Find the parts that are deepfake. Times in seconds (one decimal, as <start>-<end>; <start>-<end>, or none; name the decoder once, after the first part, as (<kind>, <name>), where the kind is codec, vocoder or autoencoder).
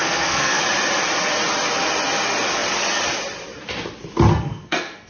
0.0-0.6 (codec, SNAC); 4.3-5.1